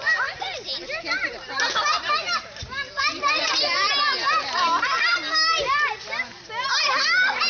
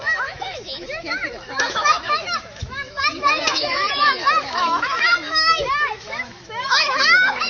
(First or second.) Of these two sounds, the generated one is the second